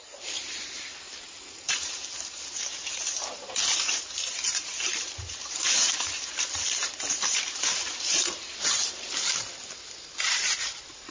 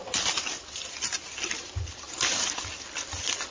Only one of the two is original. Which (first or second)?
second